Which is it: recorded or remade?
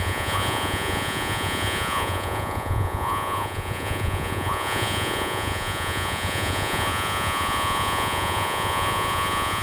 remade